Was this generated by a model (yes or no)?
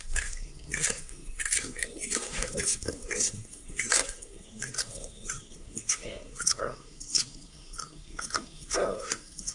yes